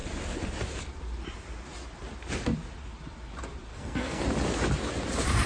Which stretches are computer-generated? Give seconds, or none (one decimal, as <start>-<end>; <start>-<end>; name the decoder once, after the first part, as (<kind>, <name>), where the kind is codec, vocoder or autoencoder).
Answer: 3.7-4.2 (codec, SNAC)